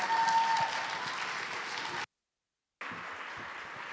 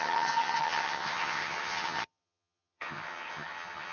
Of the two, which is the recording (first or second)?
first